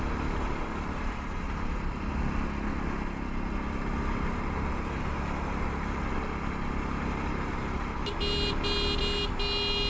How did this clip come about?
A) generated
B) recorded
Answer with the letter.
B